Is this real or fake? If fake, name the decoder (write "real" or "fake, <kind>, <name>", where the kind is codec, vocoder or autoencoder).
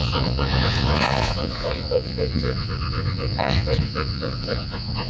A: fake, vocoder, Vocos